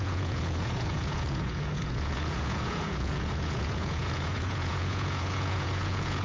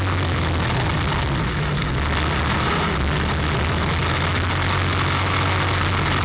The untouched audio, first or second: second